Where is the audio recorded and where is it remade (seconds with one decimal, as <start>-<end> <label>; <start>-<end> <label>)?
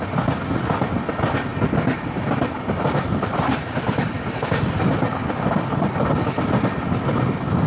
0.0-1.5 recorded; 1.5-6.1 remade; 6.1-7.7 recorded